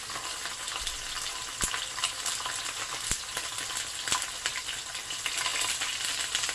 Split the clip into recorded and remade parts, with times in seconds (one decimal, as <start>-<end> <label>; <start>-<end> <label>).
0.0-6.5 recorded